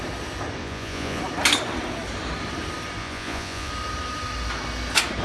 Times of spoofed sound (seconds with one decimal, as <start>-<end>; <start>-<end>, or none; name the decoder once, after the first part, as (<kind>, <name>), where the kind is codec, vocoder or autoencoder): 0.6-1.2 (vocoder, Vocos); 3.0-3.7